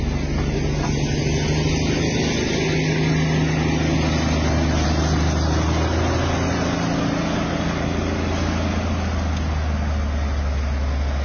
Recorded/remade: recorded